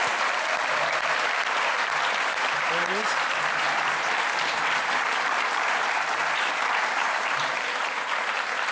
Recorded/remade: remade